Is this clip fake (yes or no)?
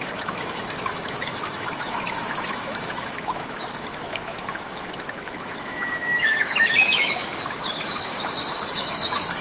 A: yes